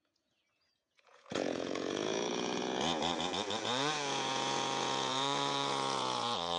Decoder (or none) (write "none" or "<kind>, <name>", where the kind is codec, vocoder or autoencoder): vocoder, Vocos